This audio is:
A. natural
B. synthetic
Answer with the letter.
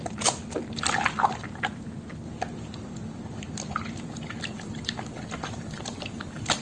A